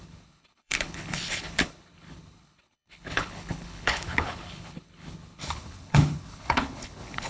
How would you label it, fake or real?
fake